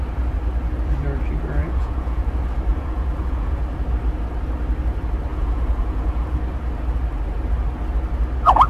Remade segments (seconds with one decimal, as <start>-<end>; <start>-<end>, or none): 1.6-2.3; 2.7-3.6; 5.3-6.4